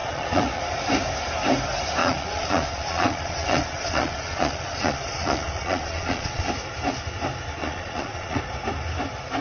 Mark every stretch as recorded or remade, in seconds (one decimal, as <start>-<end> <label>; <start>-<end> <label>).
0.0-0.6 remade; 0.6-2.0 recorded; 2.0-6.5 remade; 6.5-7.6 recorded; 7.6-8.4 remade; 8.4-9.4 recorded